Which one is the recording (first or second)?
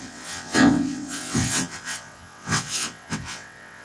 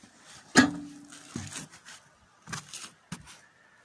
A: second